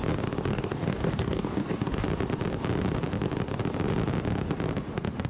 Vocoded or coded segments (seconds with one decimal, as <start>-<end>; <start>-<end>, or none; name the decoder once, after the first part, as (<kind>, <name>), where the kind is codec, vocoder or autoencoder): 0.5-1.9 (codec, DAC)